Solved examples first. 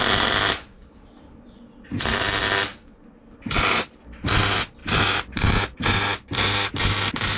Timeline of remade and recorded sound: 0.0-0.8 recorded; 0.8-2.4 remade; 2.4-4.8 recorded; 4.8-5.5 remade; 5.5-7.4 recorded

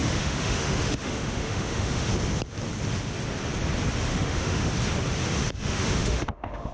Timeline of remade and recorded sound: 0.0-2.1 remade; 2.1-4.1 recorded; 4.1-4.7 remade; 4.7-5.4 recorded; 5.4-6.7 remade

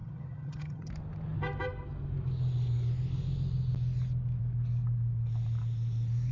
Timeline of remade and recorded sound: 0.0-0.9 remade; 0.9-6.3 recorded